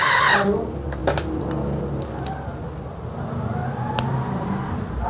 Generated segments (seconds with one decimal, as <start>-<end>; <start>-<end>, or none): none